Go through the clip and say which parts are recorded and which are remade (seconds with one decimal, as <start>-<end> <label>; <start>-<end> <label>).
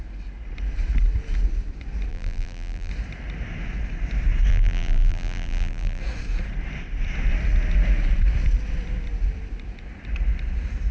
0.0-2.1 recorded; 2.1-2.9 remade; 2.9-4.5 recorded; 4.5-6.0 remade; 6.0-10.9 recorded